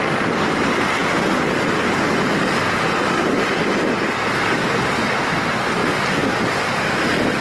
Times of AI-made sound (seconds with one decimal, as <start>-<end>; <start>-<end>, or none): none